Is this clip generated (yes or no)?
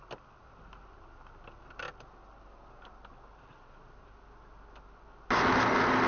no